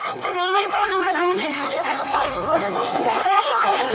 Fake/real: fake